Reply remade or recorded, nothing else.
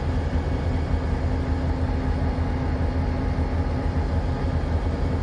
recorded